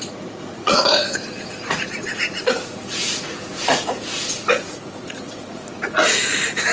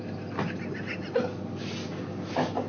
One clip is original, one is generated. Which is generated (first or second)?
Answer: first